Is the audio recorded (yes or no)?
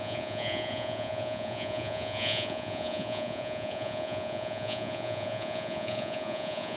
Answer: no